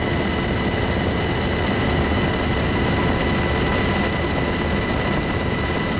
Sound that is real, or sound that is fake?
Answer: real